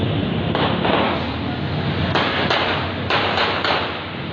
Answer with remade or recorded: remade